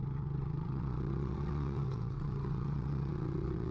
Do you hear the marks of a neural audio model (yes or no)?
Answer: yes